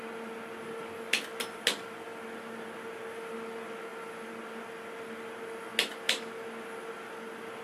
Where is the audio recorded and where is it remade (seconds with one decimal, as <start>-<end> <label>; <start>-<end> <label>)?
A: 0.0-7.6 recorded